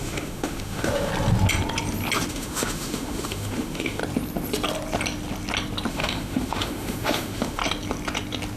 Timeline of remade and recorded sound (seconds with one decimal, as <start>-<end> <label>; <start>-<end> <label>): 0.0-1.1 remade; 1.1-2.3 recorded; 2.3-4.0 remade; 4.0-5.9 recorded; 5.9-7.6 remade; 7.6-8.6 recorded